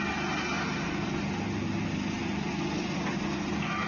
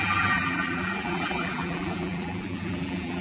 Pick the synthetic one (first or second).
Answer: second